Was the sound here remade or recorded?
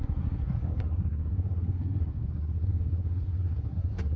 remade